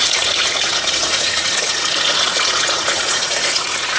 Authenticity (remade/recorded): remade